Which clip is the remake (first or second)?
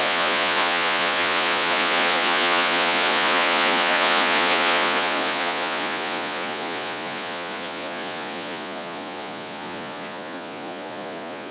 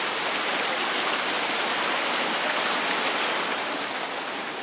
first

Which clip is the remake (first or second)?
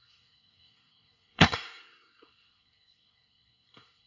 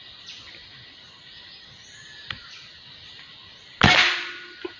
first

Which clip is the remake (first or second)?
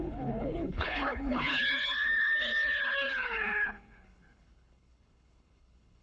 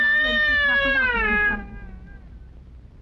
first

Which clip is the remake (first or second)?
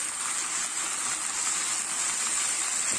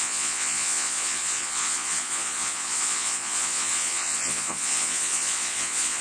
second